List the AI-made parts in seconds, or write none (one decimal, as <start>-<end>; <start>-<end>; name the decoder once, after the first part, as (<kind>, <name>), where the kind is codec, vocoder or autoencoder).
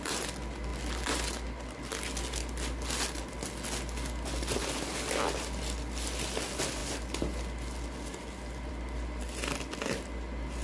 none